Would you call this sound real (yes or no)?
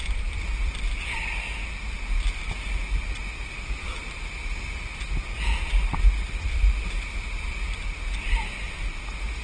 yes